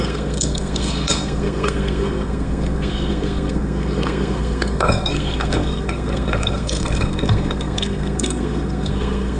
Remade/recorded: remade